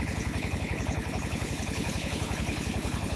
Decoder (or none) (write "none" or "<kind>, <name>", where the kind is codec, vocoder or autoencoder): codec, HILCodec